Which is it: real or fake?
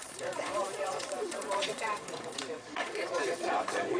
fake